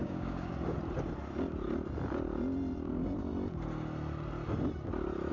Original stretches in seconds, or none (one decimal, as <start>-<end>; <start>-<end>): 0.5-5.3